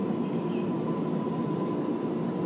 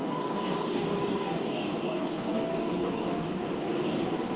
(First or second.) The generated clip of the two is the second